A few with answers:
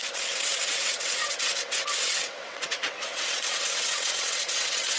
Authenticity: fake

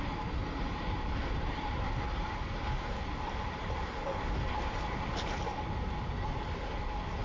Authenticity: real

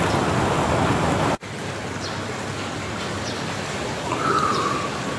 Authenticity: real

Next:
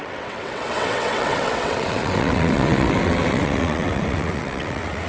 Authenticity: fake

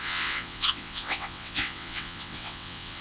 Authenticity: fake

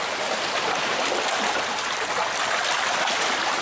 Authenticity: real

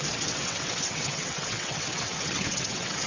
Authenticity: fake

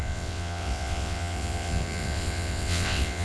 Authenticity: fake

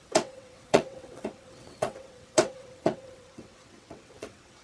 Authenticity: fake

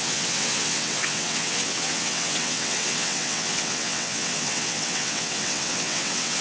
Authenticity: fake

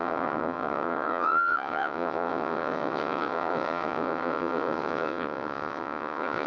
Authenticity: fake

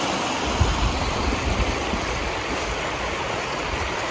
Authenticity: real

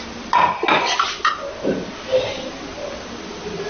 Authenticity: real